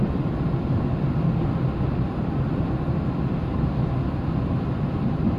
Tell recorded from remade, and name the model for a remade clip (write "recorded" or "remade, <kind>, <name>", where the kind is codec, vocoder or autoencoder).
recorded